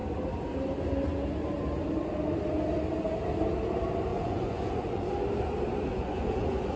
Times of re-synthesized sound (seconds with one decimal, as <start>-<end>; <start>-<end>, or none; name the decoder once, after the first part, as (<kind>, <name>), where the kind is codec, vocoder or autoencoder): 4.1-5.1 (vocoder, Vocos); 5.9-6.8